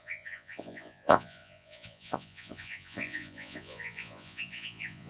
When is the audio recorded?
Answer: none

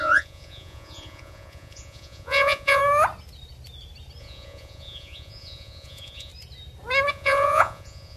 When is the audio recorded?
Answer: 2.8-4.2; 6.3-7.1

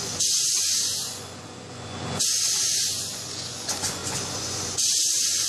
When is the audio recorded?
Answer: none

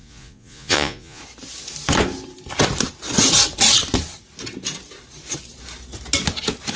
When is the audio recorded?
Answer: 1.2-6.8

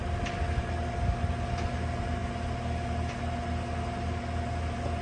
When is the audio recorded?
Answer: 0.0-5.0

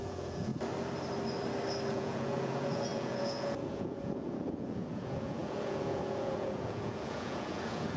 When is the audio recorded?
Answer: 0.5-1.9

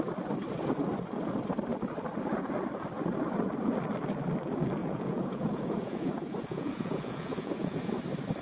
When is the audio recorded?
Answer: 0.0-4.8; 8.0-8.4